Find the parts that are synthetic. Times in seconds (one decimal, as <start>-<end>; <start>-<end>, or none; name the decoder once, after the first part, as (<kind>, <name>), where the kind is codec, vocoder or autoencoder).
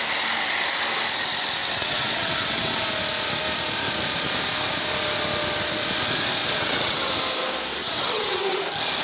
1.6-2.8 (vocoder, WaveNeXt); 6.4-7.1; 7.8-8.6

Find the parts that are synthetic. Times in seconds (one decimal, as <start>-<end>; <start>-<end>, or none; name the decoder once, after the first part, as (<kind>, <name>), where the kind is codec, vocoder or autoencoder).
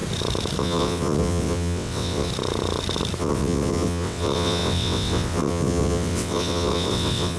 0.6-2.3 (vocoder, WaveNeXt); 3.2-7.4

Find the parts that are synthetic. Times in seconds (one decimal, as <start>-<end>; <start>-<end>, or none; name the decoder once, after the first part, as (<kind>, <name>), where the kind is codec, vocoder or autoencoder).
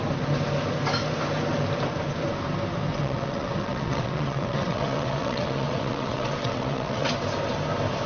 2.9-7.1 (vocoder, WaveNeXt)